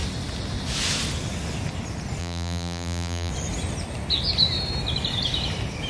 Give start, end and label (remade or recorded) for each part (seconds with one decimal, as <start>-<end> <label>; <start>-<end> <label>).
0.0-2.2 recorded; 2.2-3.3 remade; 3.3-5.9 recorded